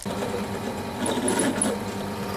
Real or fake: real